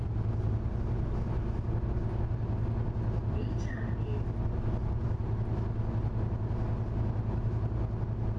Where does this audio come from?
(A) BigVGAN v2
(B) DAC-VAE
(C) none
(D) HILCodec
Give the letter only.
C